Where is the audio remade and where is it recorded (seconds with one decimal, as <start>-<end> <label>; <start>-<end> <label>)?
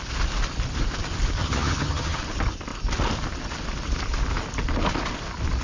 0.0-1.4 recorded; 1.4-2.2 remade; 2.2-5.6 recorded